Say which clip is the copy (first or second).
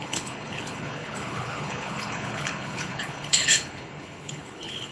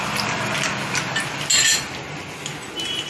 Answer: first